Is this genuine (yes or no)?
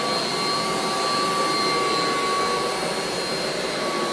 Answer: yes